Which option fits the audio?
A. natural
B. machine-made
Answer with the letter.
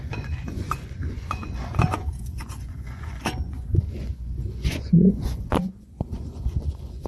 B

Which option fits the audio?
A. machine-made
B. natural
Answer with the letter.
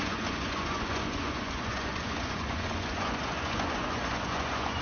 A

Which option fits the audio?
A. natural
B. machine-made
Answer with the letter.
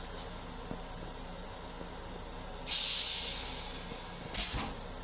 A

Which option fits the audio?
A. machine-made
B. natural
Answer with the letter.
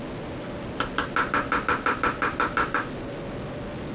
B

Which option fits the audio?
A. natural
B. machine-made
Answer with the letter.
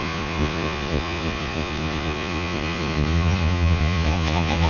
B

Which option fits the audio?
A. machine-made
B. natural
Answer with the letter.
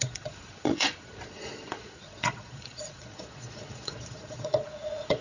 A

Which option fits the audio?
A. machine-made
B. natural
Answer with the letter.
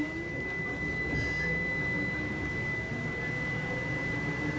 B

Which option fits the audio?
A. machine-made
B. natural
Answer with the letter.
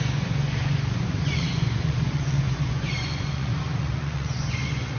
A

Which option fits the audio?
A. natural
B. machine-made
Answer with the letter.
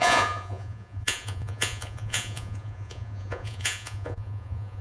B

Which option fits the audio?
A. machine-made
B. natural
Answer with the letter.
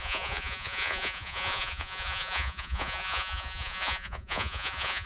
A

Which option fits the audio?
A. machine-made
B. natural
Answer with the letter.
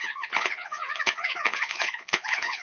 A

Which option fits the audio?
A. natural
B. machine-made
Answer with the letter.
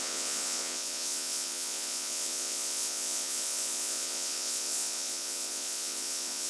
B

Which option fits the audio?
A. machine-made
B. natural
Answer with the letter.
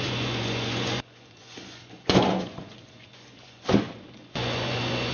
A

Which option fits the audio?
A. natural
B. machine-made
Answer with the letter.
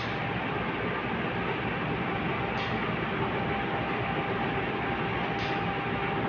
A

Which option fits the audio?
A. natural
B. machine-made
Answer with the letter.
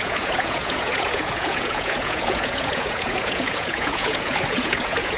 B